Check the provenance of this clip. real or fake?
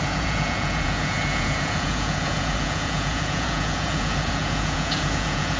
fake